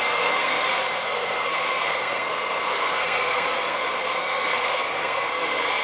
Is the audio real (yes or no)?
no